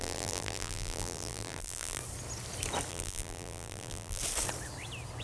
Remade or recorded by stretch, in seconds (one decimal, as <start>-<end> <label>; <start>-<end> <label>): 0.0-2.0 remade; 2.0-2.9 recorded; 2.9-4.2 remade; 4.2-5.2 recorded